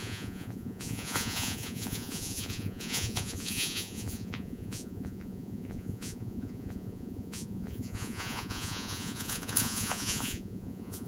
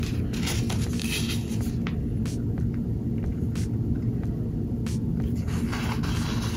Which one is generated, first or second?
first